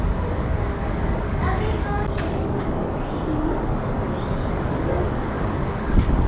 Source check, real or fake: fake